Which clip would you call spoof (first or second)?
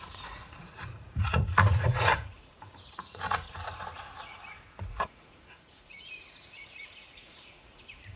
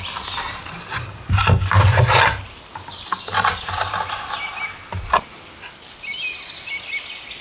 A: first